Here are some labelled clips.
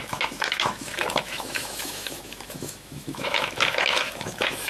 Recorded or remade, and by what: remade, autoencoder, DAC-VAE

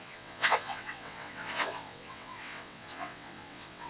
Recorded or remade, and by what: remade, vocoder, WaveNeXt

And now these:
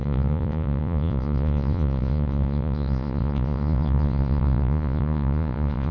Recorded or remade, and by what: remade, vocoder, Vocos